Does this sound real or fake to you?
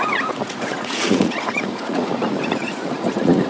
fake